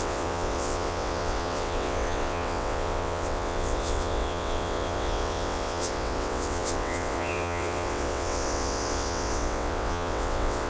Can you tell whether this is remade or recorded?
remade